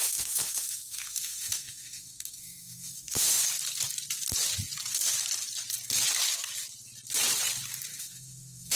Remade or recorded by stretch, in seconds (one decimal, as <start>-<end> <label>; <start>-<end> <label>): 0.0-3.4 remade; 3.4-8.0 recorded; 8.0-8.8 remade